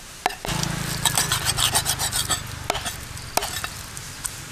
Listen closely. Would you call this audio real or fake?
real